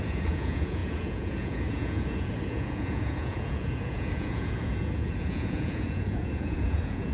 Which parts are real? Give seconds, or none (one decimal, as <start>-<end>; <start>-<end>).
none